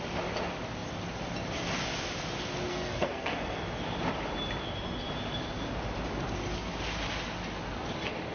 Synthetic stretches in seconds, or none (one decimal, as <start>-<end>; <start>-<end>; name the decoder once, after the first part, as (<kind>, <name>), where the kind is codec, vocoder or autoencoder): 2.7-3.6 (codec, SNAC)